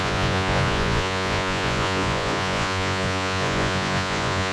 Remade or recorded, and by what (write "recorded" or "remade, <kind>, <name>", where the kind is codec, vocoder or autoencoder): remade, vocoder, Vocos